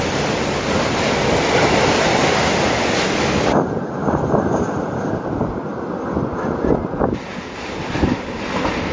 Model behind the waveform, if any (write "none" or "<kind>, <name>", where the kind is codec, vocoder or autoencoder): none